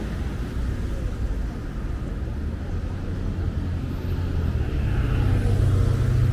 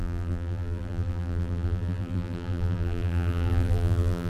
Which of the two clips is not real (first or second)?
second